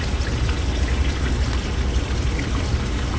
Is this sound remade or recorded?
recorded